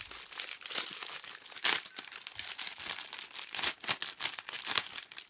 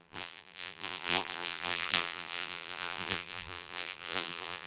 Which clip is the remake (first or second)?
second